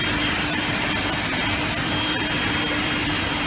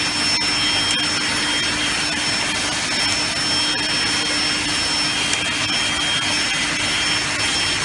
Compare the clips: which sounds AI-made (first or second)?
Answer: first